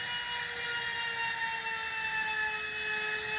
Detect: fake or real real